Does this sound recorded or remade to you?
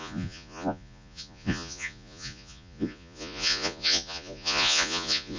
remade